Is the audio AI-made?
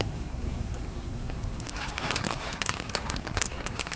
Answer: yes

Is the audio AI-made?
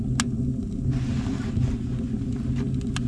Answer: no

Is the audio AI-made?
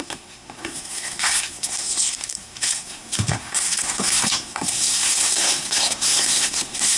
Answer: yes